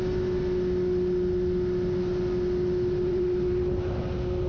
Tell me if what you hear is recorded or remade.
recorded